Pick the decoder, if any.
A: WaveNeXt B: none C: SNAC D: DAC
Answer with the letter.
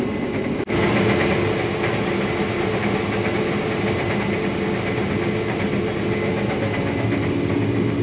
B